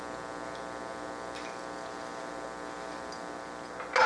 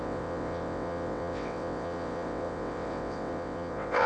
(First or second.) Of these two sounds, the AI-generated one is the second